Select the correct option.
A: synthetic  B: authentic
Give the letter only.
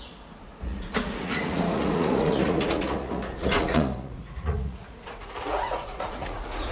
A